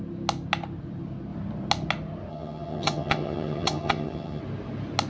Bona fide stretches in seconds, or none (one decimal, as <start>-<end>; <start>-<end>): 0.0-2.3; 4.4-5.1